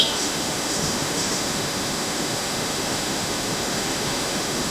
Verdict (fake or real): fake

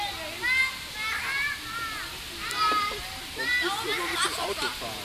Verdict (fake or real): real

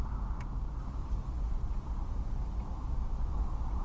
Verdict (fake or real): real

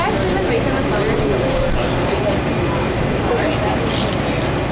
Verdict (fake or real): real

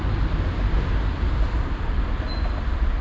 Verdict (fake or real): real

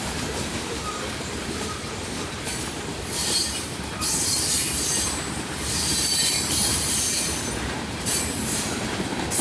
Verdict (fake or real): fake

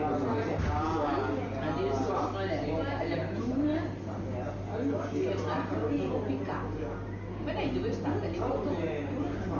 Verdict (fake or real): real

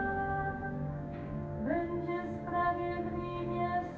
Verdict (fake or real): fake